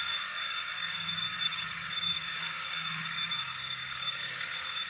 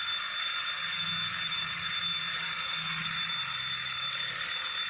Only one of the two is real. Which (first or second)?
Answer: second